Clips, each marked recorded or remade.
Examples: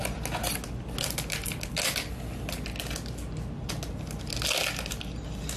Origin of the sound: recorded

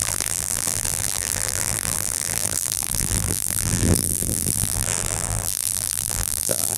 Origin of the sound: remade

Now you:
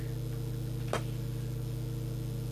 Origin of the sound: recorded